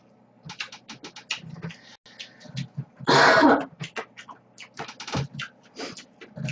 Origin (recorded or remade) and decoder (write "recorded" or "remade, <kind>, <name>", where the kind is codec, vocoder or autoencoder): recorded